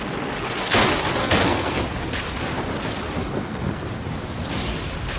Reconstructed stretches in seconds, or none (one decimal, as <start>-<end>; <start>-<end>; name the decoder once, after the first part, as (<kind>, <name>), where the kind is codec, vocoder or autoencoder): 1.2-1.8 (codec, SNAC); 3.2-3.9